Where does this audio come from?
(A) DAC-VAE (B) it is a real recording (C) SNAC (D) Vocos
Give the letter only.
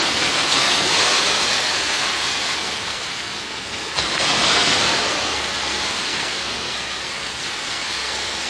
C